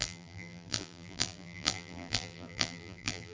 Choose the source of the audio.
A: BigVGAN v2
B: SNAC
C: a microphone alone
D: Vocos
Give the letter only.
A